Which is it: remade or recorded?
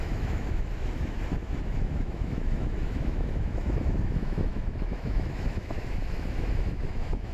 remade